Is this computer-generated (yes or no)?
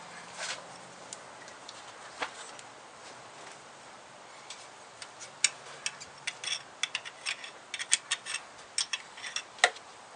no